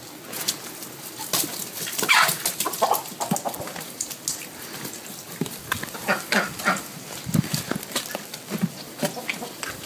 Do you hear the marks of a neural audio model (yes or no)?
no